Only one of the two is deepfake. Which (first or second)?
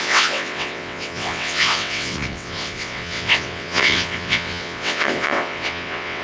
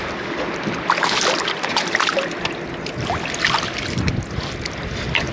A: first